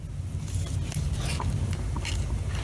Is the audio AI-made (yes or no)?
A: no